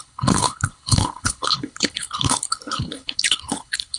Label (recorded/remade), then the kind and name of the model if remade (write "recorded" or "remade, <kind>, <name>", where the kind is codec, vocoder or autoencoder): remade, codec, HILCodec